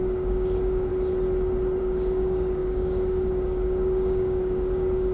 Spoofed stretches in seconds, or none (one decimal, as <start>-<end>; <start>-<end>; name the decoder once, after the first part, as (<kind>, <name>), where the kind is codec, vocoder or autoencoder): 0.0-0.9 (codec, DAC); 1.8-5.1